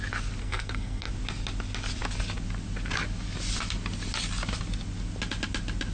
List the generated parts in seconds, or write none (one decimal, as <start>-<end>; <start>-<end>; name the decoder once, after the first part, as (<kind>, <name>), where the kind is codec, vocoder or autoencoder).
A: 0.4-1.1 (codec, SNAC)